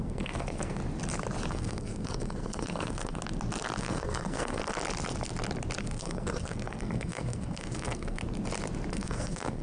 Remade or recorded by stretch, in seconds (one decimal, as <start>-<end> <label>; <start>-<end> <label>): 0.0-0.8 remade; 0.8-1.5 recorded; 1.5-3.2 remade; 3.2-3.8 recorded; 3.8-4.6 remade; 4.6-5.8 recorded; 5.8-8.2 remade; 8.2-8.9 recorded; 8.9-9.6 remade